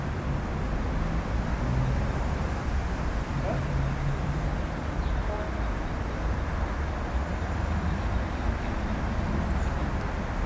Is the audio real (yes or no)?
yes